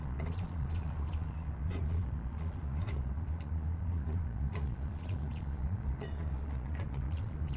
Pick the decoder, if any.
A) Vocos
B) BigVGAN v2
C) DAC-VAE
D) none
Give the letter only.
A